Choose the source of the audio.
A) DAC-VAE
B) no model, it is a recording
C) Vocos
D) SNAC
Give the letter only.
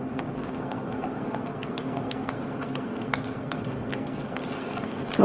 D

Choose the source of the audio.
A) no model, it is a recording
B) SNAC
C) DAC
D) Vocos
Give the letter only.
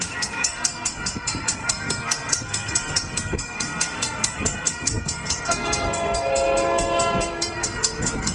B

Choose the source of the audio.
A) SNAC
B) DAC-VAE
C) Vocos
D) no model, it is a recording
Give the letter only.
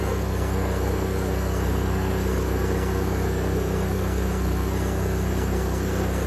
A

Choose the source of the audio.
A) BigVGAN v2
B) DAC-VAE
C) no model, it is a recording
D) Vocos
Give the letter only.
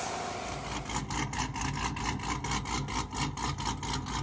C